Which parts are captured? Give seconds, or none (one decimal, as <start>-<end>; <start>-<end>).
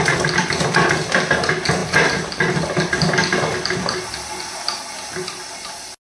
0.0-6.0